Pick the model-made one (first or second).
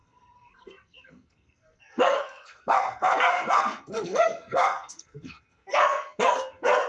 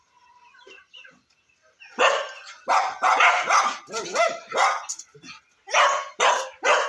first